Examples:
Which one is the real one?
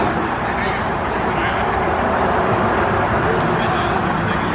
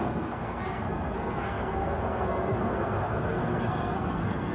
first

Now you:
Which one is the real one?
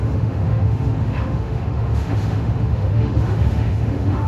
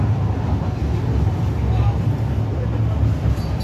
second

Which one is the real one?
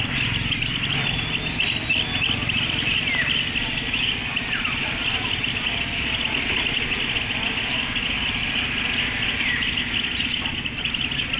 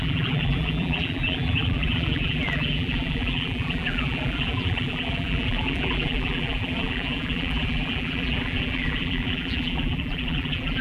first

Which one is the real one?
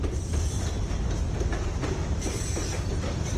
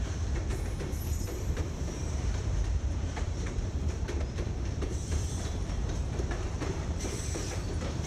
first